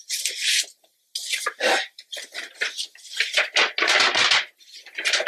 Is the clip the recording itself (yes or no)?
yes